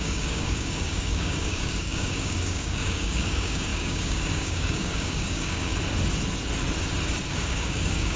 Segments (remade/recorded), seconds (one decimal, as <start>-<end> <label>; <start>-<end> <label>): 0.0-5.7 remade; 5.7-7.3 recorded; 7.3-8.2 remade